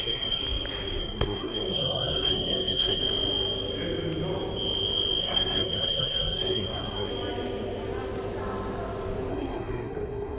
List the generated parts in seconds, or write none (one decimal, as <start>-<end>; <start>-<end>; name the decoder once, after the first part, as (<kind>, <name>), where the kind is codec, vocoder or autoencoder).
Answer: 0.0-0.4 (codec, SNAC); 1.0-3.0; 5.2-7.1; 9.3-10.4